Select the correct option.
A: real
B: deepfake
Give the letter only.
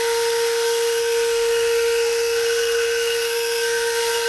B